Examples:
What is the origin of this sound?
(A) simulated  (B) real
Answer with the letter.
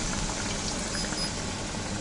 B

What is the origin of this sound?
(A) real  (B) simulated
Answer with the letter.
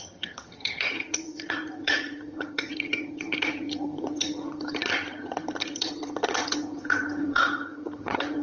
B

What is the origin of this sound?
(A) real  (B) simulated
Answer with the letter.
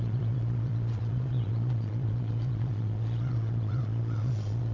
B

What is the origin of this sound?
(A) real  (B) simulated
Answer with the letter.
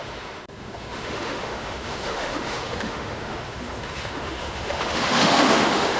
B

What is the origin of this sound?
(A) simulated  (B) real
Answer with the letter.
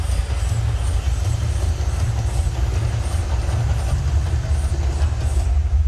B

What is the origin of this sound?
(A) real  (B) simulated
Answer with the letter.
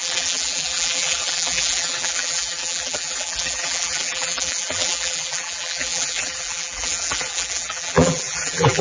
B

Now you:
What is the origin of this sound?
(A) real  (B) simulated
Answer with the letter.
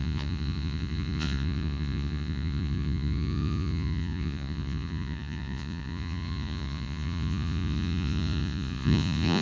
B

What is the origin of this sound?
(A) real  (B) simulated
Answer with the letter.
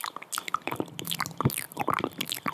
A